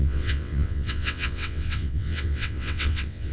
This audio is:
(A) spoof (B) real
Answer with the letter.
A